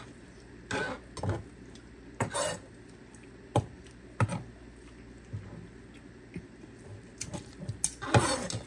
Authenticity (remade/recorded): recorded